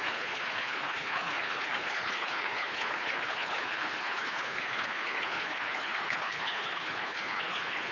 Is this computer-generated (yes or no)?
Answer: yes